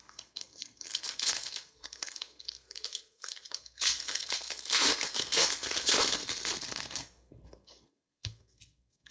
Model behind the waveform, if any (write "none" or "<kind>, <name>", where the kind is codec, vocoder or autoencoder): codec, SNAC